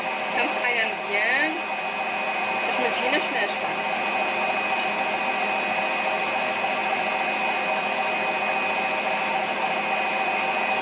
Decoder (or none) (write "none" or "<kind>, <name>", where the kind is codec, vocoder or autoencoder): none